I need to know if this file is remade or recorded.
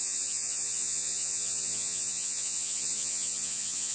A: remade